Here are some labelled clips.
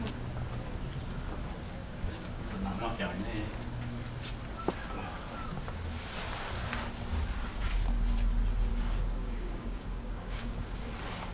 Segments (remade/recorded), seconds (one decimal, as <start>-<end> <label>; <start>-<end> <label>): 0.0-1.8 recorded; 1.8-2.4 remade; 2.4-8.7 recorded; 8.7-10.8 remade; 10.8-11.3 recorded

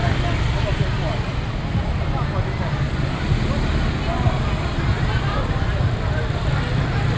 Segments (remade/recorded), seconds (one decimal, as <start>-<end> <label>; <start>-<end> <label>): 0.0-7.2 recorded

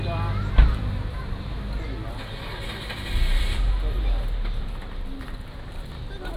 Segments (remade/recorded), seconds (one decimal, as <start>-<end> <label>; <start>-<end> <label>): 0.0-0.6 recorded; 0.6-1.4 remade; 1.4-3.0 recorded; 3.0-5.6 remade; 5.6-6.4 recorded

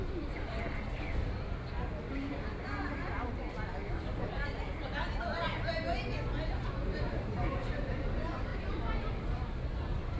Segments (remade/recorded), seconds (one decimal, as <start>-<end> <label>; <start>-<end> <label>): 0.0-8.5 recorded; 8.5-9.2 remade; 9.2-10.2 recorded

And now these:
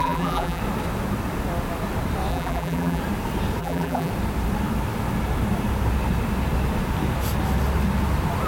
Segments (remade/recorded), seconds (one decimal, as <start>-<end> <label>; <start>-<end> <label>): 0.0-0.6 remade; 0.6-2.3 recorded; 2.3-3.0 remade; 3.0-3.6 recorded; 3.6-4.1 remade; 4.1-8.5 recorded